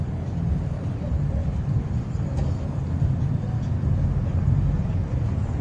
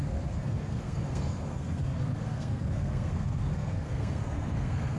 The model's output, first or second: second